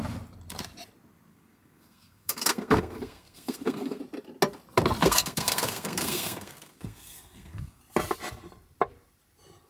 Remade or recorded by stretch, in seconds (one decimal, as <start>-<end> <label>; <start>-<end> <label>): 0.0-1.3 recorded; 1.3-4.0 remade; 4.0-5.0 recorded; 5.0-7.8 remade; 7.8-9.7 recorded